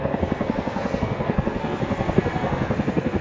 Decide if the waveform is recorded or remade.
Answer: remade